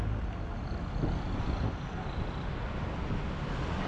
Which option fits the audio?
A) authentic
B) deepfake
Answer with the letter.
A